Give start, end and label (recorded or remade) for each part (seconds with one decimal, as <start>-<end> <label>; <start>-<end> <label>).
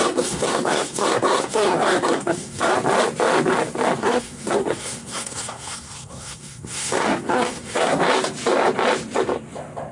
0.0-2.7 remade; 2.7-4.0 recorded; 4.0-8.0 remade; 8.0-9.9 recorded